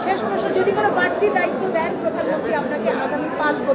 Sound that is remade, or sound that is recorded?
recorded